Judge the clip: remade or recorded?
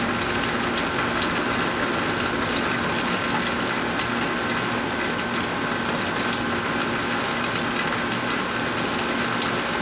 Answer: recorded